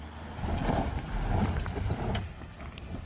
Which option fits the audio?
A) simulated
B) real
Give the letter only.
B